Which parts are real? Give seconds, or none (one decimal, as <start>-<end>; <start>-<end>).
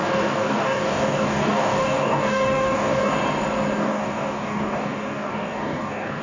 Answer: 3.1-3.8